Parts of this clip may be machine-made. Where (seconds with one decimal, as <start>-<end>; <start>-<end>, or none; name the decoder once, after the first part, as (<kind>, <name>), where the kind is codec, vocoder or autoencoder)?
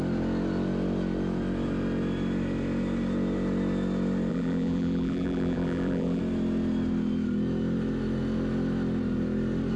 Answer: 4.3-6.2 (vocoder, BigVGAN v2)